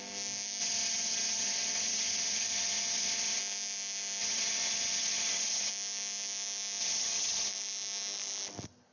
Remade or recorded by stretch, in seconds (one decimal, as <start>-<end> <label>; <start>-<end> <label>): 0.0-0.6 recorded; 0.6-3.4 remade; 3.4-4.2 recorded; 4.2-5.7 remade; 5.7-6.8 recorded; 6.8-7.5 remade; 7.5-8.9 recorded